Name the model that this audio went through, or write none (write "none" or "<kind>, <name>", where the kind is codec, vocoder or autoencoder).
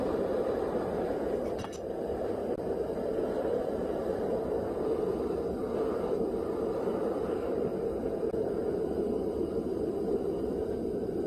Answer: vocoder, BigVGAN v2